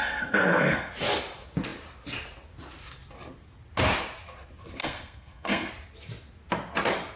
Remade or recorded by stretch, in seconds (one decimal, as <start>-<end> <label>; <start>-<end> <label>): 0.0-0.9 remade; 0.9-4.8 recorded; 4.8-5.7 remade; 5.7-7.2 recorded